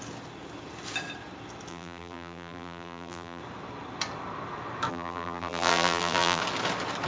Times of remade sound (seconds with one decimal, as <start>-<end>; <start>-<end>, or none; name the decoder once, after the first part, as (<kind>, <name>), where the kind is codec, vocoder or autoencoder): 1.7-3.4 (vocoder, BigVGAN v2); 4.9-6.4